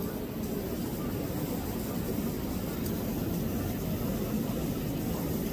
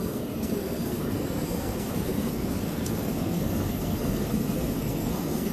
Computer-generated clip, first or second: second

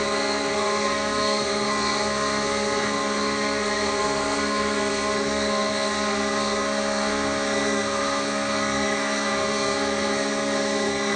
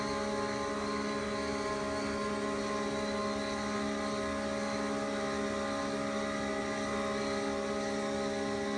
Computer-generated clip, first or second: first